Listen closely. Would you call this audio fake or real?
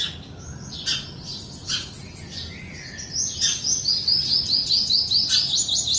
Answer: real